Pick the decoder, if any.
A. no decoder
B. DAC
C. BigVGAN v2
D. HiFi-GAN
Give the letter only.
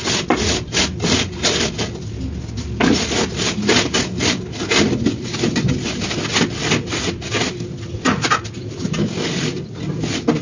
A